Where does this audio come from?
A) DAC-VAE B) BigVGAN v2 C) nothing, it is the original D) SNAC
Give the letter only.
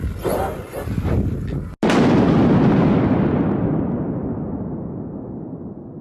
C